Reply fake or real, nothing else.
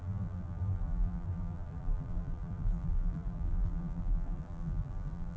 fake